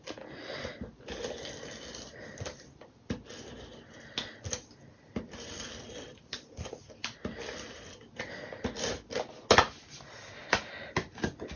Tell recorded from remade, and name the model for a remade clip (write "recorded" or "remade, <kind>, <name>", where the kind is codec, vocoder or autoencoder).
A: recorded